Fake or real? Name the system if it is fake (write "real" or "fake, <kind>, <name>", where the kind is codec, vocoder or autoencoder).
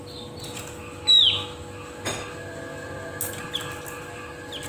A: real